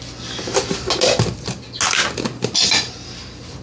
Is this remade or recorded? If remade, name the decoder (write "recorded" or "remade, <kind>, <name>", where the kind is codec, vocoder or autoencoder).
recorded